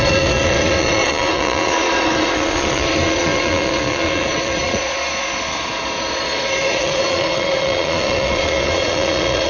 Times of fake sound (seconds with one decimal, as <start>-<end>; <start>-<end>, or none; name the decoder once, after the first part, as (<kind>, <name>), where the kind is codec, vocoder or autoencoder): 0.0-9.5 (vocoder, Vocos)